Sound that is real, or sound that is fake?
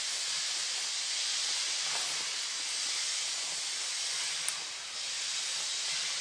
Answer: real